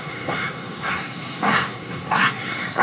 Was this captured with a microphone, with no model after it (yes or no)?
no